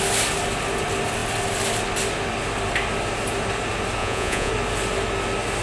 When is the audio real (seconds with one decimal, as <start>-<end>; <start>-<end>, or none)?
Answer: 0.0-4.0; 4.5-5.6